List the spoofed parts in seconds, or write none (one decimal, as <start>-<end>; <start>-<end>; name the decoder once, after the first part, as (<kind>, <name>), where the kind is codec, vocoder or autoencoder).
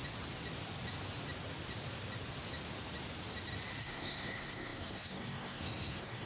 3.8-6.3 (codec, SNAC)